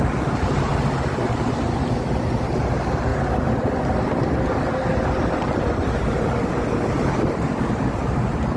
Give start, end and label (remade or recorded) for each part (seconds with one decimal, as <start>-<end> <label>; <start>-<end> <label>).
0.0-0.7 remade; 0.7-2.6 recorded; 2.6-3.1 remade; 3.1-7.3 recorded; 7.3-8.6 remade